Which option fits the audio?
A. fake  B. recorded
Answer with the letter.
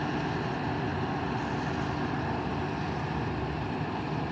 B